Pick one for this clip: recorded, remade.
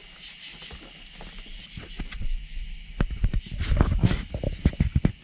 recorded